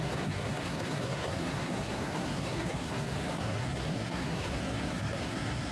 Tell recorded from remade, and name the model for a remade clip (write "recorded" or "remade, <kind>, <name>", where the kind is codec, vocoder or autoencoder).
remade, codec, SNAC